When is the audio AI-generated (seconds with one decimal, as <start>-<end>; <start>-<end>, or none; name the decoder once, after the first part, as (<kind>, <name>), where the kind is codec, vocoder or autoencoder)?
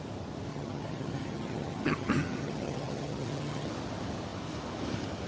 0.5-3.7 (vocoder, HiFi-GAN)